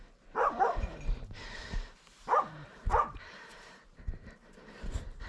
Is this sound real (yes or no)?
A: no